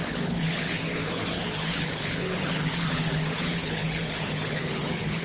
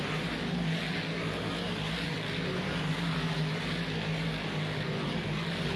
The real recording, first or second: second